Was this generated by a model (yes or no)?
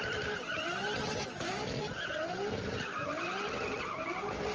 yes